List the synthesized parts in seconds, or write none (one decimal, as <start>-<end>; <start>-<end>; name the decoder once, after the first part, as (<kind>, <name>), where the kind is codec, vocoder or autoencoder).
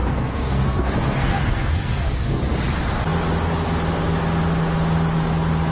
0.0-2.4 (codec, SNAC)